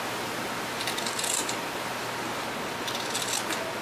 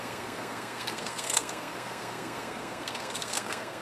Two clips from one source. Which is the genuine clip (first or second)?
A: first